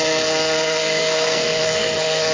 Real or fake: fake